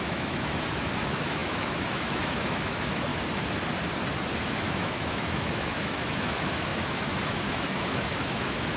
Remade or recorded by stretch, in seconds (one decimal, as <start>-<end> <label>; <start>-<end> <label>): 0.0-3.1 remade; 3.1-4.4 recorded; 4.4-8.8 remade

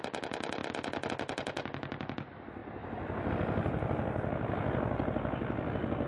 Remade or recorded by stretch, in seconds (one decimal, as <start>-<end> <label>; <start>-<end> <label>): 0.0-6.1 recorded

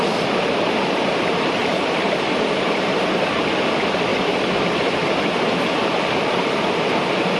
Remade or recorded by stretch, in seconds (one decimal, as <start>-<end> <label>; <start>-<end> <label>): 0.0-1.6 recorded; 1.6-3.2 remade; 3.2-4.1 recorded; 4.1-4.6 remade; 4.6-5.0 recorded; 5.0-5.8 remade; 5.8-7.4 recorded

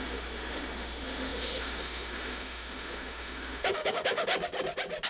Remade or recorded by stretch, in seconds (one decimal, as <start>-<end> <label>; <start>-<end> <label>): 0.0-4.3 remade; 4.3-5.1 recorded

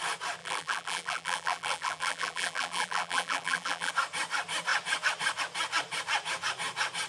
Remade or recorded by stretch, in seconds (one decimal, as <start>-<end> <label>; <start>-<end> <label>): 0.0-0.4 recorded; 0.4-3.9 remade; 3.9-7.1 recorded